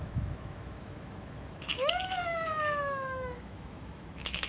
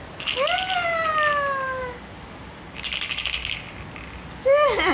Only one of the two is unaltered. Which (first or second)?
second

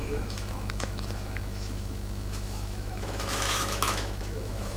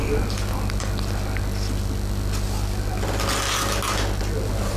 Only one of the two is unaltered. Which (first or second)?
second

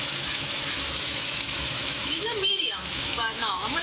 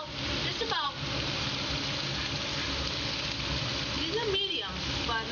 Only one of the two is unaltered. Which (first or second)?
second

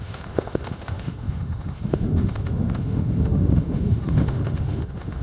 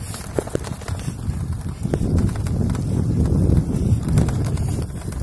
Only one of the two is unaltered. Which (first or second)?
second